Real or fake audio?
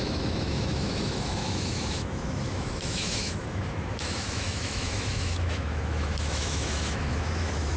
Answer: fake